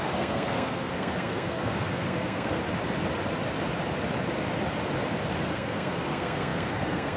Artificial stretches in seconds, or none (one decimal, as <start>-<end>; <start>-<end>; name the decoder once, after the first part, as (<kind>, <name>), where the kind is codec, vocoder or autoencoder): 0.0-2.6 (codec, SNAC); 5.5-7.2